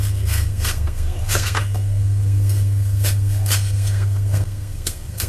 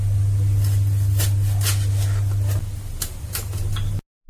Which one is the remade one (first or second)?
first